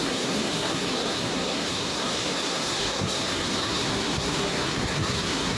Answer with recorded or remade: remade